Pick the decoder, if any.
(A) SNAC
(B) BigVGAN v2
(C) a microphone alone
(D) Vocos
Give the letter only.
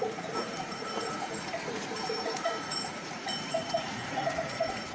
D